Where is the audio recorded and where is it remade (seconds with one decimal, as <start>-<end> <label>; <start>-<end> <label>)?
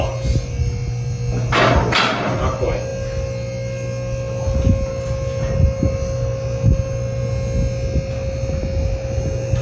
0.0-9.6 recorded